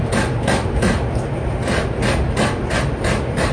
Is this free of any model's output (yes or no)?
yes